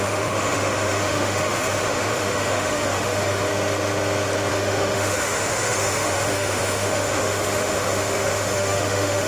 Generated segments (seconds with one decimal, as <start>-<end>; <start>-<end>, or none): 0.0-3.5; 4.5-9.3